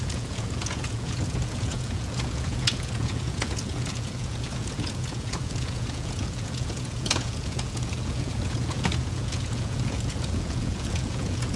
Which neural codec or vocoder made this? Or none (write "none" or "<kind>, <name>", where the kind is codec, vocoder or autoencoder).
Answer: vocoder, Vocos